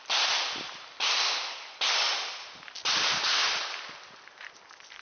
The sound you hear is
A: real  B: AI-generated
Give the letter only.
A